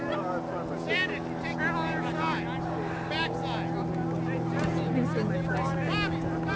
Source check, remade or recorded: recorded